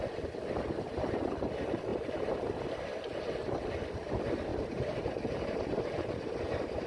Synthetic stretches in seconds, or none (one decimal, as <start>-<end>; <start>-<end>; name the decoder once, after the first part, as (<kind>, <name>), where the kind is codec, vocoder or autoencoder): 4.5-6.9 (vocoder, BigVGAN v2)